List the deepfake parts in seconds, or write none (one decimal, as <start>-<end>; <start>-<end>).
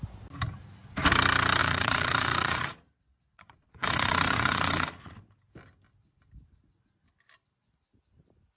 1.6-5.2